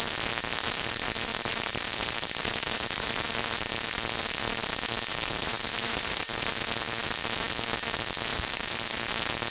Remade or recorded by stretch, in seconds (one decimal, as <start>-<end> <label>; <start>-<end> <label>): 0.0-1.3 recorded; 1.3-3.4 remade; 3.4-5.1 recorded; 5.1-6.5 remade; 6.5-8.3 recorded; 8.3-9.1 remade; 9.1-9.5 recorded